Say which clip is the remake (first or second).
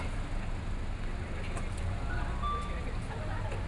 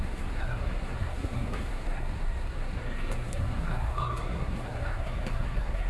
second